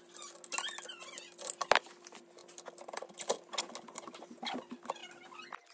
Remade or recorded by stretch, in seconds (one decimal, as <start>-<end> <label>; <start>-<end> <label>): 0.0-5.7 recorded